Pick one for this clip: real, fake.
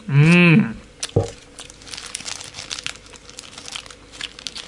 real